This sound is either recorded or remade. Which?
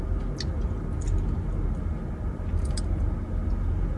recorded